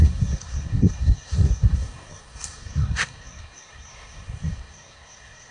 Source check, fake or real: fake